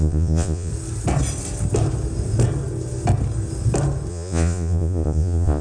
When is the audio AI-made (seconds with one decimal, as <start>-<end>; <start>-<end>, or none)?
0.0-0.7; 4.1-5.6